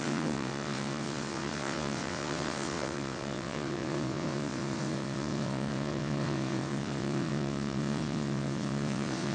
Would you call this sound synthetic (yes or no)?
yes